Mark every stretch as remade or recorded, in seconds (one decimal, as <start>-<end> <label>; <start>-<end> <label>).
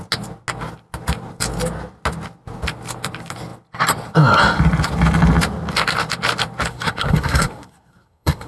0.0-6.7 recorded; 6.7-8.5 remade